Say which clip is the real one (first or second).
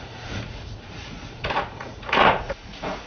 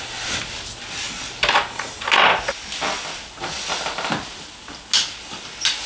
second